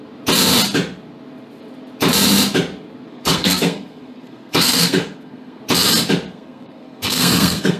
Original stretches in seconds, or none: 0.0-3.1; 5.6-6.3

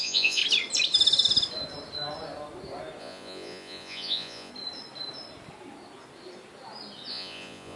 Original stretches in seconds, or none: 0.4-3.0; 4.5-7.1

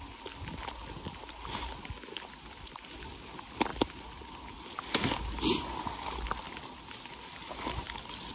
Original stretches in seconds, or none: 0.0-8.3

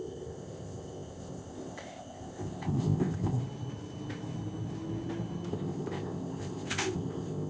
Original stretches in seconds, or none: 3.4-5.5

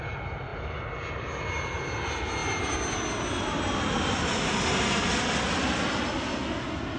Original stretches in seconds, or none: 0.0-7.0

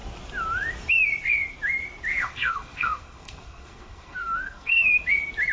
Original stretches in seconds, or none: 0.0-2.1; 4.9-5.5

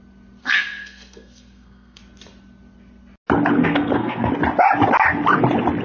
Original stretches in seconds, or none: 0.0-0.4; 2.0-3.6; 4.3-5.8

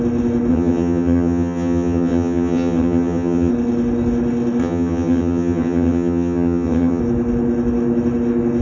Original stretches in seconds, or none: 0.0-0.5; 3.5-4.6; 7.0-8.6